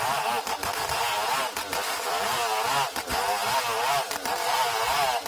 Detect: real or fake real